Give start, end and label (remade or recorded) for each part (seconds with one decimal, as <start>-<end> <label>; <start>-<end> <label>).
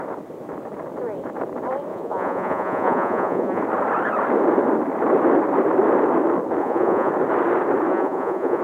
0.0-1.9 recorded; 1.9-3.6 remade; 3.6-6.6 recorded; 6.6-7.1 remade; 7.1-7.9 recorded; 7.9-8.6 remade